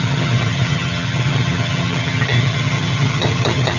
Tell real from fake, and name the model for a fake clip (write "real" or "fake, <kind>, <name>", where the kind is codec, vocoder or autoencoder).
fake, vocoder, HiFi-GAN